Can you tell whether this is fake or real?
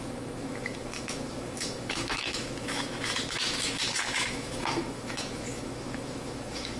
fake